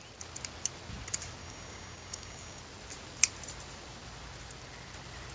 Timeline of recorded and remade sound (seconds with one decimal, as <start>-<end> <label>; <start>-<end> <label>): 0.0-1.4 recorded; 1.4-2.6 remade; 2.6-5.3 recorded